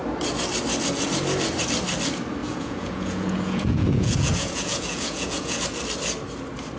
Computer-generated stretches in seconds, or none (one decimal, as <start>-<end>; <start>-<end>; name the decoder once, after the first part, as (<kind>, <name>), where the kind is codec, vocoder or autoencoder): 2.4-5.6 (vocoder, Vocos)